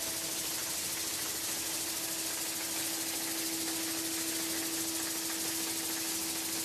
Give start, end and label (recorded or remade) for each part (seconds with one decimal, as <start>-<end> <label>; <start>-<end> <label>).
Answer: 0.0-6.6 recorded